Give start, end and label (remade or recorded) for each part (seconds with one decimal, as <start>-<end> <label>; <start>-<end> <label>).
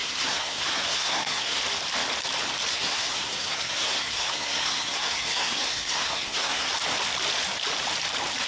0.0-1.6 remade; 1.6-2.7 recorded; 2.7-6.7 remade; 6.7-8.5 recorded